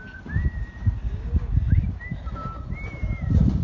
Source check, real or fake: real